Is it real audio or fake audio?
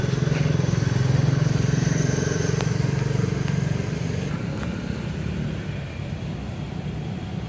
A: real